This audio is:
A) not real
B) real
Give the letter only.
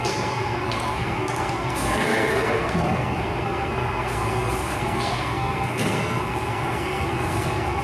A